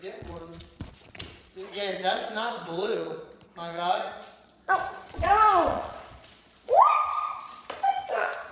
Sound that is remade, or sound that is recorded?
remade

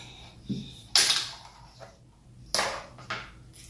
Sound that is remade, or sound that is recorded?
recorded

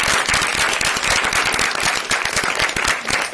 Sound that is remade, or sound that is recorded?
recorded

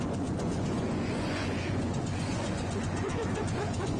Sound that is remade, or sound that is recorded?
remade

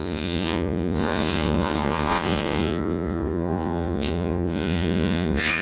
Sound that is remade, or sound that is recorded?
remade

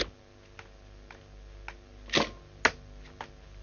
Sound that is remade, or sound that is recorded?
recorded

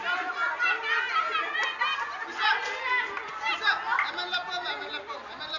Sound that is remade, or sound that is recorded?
recorded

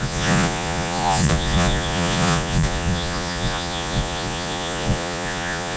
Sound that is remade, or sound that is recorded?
remade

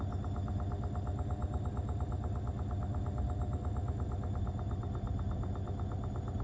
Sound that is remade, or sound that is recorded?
recorded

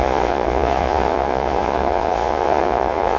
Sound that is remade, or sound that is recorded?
remade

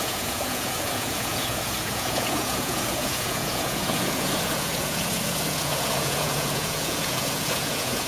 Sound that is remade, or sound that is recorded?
remade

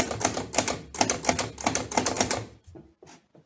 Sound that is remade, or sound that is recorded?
recorded